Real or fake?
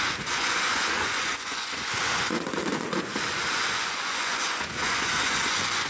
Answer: fake